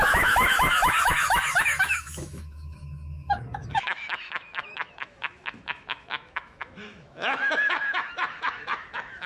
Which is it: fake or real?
fake